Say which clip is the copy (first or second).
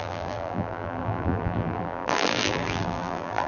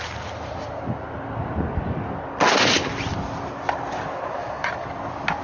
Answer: first